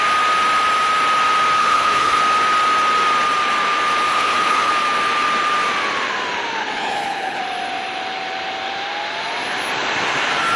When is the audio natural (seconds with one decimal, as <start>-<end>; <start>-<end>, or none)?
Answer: 0.0-1.6; 2.2-4.1; 4.7-6.6; 7.4-10.6